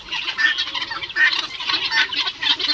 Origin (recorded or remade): recorded